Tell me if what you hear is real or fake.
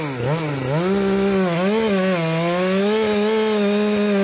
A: real